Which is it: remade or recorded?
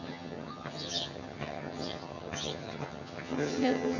remade